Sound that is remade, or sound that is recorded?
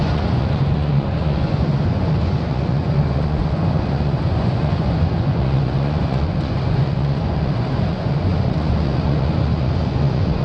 remade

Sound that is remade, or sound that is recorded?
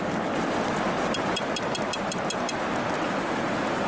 recorded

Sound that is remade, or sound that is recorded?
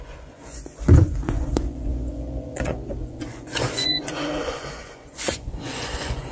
remade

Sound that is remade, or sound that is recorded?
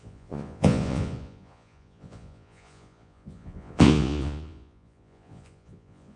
remade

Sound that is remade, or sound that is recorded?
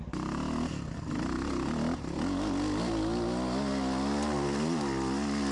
recorded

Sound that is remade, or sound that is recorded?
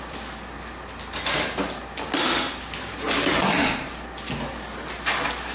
recorded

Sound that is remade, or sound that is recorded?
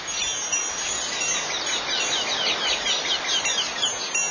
recorded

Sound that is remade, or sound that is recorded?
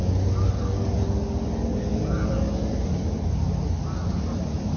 recorded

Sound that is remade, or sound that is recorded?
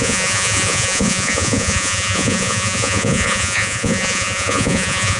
remade